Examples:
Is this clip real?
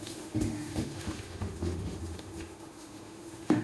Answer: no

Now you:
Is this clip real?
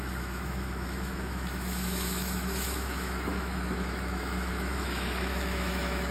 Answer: no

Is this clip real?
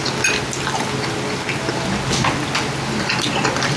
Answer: yes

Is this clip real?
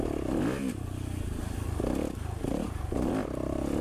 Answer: yes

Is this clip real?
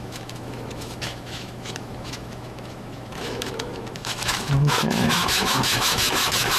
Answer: no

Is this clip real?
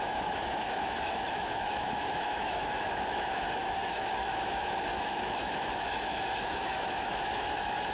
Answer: no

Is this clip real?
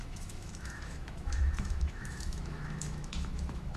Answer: no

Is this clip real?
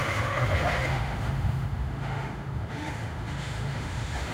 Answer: no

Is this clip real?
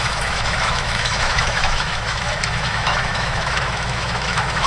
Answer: no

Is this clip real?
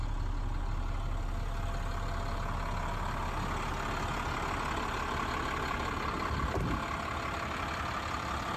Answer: yes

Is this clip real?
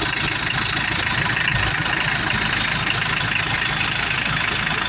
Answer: yes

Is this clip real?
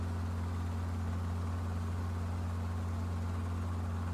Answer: yes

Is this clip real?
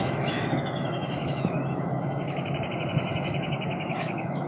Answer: no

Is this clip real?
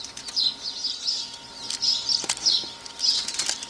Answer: yes